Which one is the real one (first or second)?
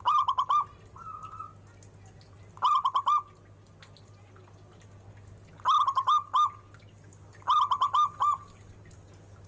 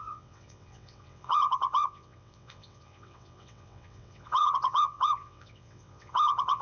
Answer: first